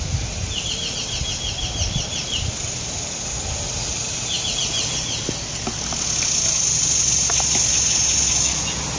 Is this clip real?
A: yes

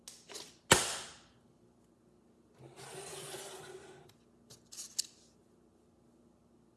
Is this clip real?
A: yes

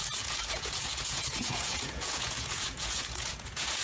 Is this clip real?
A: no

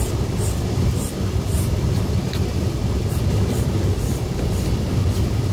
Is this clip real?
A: yes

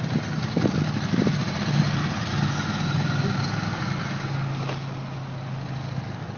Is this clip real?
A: yes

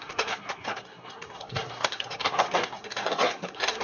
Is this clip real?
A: no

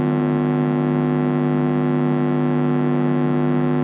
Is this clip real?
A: yes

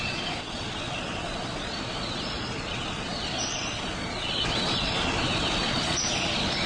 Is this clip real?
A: no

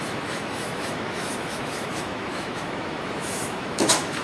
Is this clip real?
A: no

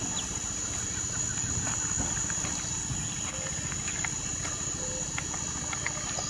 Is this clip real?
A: yes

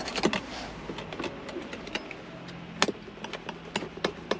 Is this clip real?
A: yes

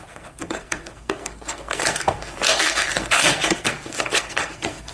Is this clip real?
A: no